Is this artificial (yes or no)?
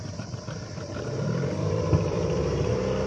yes